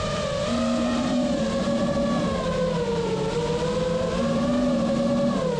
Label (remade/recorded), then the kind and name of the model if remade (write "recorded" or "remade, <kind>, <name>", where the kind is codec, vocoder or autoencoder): remade, vocoder, BigVGAN v2